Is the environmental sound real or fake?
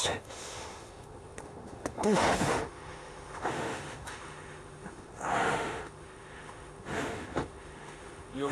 fake